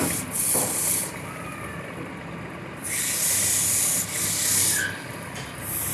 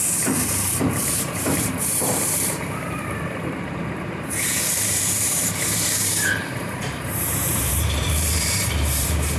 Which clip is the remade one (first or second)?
second